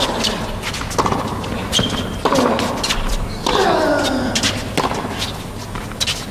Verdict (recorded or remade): recorded